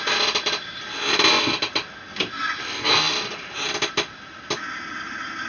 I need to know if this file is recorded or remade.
recorded